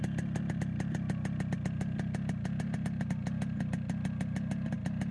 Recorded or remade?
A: recorded